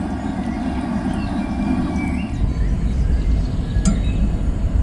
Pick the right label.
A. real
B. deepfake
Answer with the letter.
A